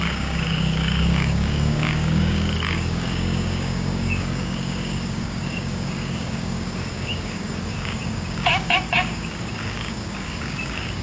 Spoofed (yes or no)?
yes